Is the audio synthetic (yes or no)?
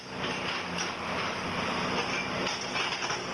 no